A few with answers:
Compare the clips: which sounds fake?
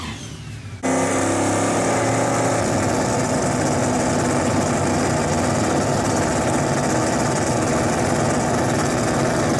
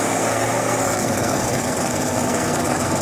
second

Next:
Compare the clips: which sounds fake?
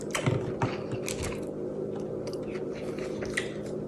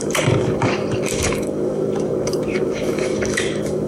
second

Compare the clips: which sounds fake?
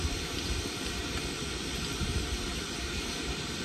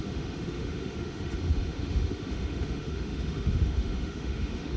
second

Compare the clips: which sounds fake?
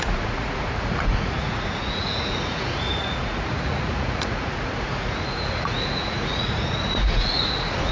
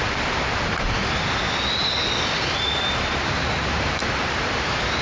first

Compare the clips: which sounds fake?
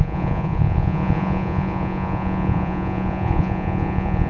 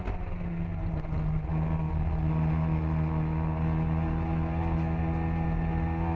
first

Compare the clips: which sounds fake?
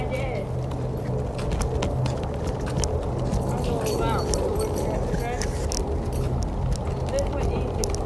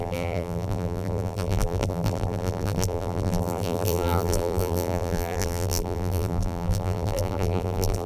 second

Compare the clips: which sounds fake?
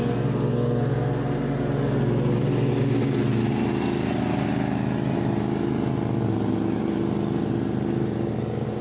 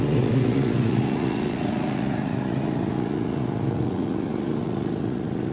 second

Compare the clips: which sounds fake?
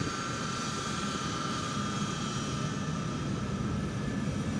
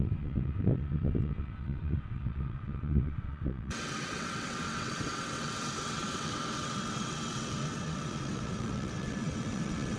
second